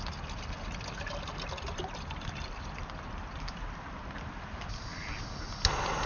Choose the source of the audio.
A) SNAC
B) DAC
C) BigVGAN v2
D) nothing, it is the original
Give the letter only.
D